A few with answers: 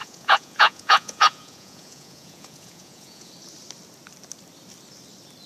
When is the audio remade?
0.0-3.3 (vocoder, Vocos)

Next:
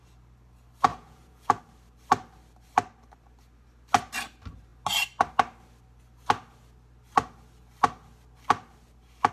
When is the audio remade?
0.9-1.6 (vocoder, Vocos)

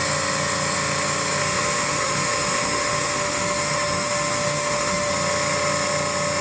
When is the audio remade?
1.4-5.1 (autoencoder, DAC-VAE)

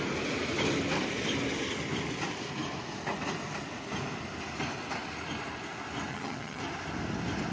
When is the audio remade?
6.1-6.6 (vocoder, HiFi-GAN)

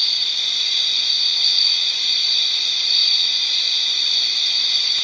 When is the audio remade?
1.0-1.6 (codec, ZipCodec)

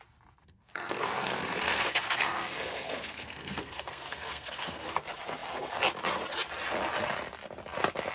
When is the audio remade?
0.4-4.9 (codec, SNAC)